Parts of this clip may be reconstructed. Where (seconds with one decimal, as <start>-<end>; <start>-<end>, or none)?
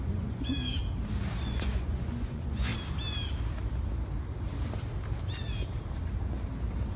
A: 0.0-0.8; 1.4-2.7